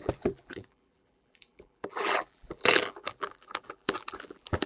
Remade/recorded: remade